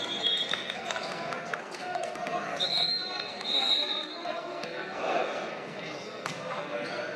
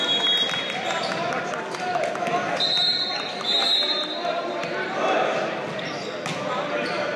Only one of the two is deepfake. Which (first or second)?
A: first